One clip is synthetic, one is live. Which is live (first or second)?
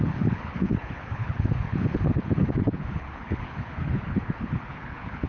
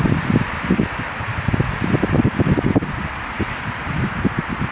second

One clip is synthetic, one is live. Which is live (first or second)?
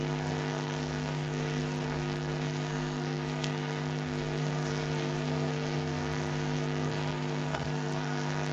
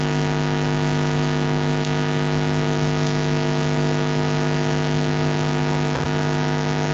second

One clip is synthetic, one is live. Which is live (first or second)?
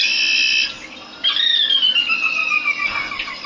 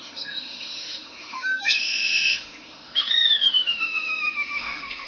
first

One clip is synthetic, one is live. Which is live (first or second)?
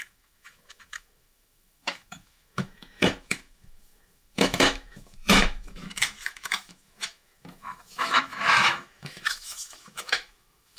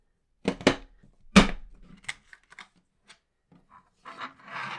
second